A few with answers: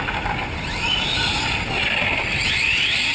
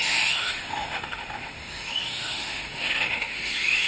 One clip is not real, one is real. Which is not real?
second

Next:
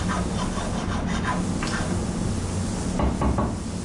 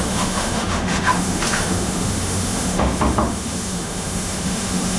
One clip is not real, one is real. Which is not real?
second